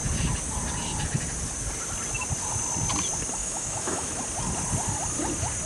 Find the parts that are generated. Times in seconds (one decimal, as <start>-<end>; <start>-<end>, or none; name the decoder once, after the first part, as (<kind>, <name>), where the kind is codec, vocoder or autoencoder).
3.4-4.2 (autoencoder, DAC-VAE)